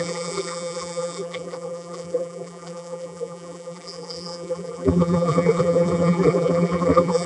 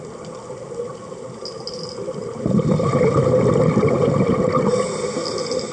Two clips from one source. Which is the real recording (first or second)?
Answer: second